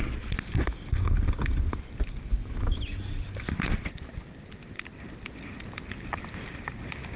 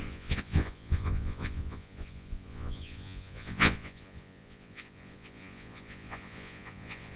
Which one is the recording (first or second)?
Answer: first